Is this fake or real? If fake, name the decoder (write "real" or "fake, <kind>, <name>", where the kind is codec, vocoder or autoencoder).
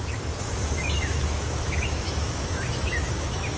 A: fake, autoencoder, DAC-VAE